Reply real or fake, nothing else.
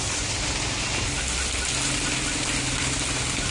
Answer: real